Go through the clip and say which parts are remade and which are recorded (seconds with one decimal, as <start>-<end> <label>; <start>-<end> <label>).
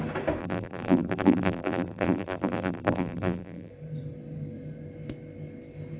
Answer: 0.0-0.4 recorded; 0.4-3.7 remade; 3.7-6.0 recorded